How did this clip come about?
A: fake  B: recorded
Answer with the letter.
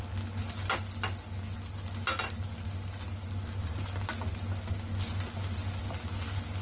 B